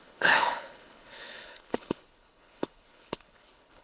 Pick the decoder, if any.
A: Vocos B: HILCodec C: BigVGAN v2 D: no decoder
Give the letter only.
B